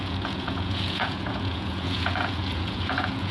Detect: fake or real fake